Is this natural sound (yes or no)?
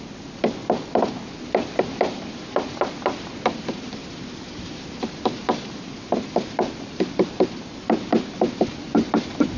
yes